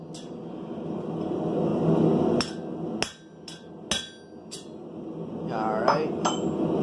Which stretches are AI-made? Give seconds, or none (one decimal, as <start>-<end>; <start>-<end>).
none